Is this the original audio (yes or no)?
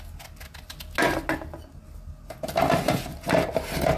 yes